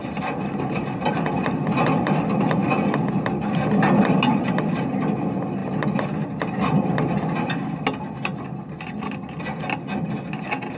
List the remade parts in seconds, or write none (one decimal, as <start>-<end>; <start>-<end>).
none